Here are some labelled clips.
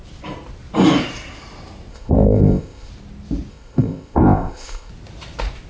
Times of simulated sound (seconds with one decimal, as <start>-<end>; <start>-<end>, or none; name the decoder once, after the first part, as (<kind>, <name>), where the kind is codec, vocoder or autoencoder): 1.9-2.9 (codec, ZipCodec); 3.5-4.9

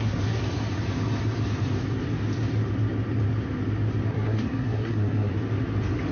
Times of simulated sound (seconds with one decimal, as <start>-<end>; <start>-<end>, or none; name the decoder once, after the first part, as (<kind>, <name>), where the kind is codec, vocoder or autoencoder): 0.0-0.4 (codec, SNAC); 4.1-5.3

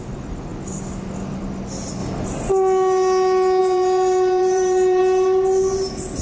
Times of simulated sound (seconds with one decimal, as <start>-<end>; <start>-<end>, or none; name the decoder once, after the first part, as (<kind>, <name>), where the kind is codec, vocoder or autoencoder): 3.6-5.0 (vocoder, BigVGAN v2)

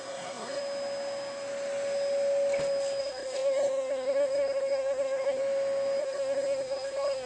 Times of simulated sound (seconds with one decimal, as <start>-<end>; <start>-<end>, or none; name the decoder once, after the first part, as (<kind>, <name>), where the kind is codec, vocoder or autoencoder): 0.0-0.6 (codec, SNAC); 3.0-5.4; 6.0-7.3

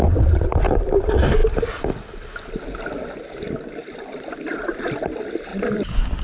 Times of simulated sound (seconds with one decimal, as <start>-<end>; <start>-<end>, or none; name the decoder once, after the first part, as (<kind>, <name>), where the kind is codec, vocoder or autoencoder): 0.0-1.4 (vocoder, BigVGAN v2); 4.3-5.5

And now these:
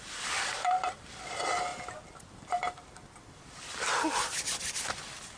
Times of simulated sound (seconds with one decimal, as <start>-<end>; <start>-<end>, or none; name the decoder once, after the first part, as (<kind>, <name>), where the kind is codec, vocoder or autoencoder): 0.0-1.7 (vocoder, BigVGAN v2); 2.3-5.4

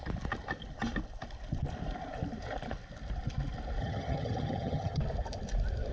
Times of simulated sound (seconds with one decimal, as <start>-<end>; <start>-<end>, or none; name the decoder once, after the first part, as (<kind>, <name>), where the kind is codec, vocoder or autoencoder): 3.8-5.0 (vocoder, HiFi-GAN)